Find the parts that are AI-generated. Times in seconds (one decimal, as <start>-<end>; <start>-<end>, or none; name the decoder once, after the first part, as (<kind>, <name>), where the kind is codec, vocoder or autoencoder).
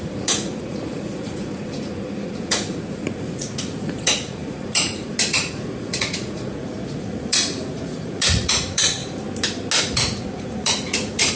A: 0.0-9.0 (vocoder, Vocos); 9.8-11.4